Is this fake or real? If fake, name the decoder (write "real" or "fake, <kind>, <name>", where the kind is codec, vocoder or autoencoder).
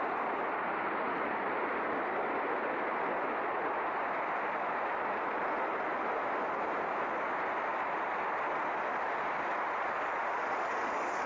real